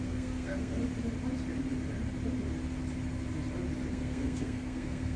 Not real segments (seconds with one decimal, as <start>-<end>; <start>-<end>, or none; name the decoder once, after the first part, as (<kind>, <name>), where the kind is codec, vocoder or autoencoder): 0.0-0.8 (codec, SNAC); 3.9-5.2